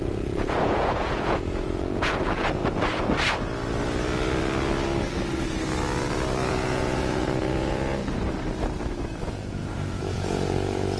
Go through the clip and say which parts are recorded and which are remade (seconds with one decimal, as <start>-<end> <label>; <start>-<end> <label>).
0.0-2.6 remade; 2.6-6.5 recorded; 6.5-8.0 remade; 8.0-9.2 recorded; 9.2-11.0 remade